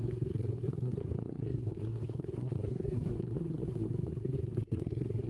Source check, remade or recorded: remade